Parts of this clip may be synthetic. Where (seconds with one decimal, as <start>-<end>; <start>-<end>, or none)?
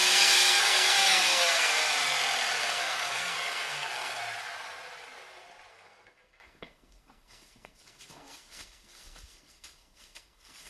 0.0-1.8; 2.6-4.2; 5.7-10.7